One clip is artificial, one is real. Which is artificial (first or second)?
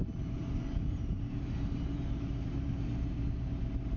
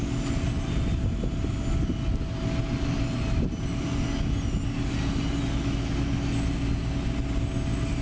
first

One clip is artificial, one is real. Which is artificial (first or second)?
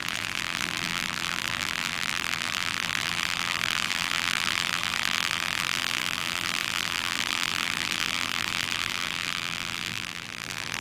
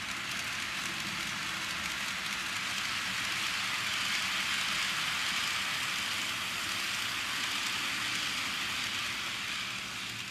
first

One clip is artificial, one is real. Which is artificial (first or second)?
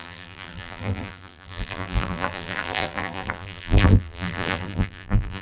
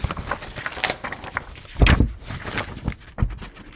first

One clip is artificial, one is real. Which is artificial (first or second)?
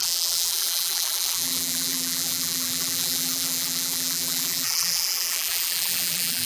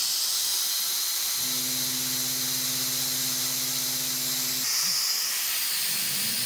first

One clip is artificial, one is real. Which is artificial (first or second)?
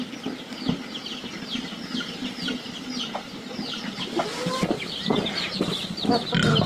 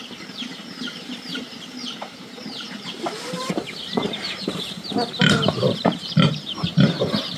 second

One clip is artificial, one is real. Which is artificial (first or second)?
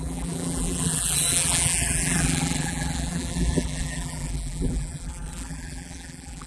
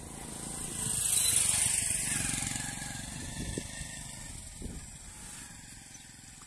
first